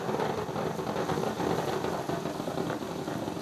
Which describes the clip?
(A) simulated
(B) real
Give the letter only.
B